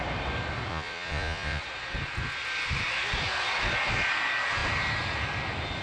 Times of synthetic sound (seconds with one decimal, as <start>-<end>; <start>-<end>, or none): 0.7-1.6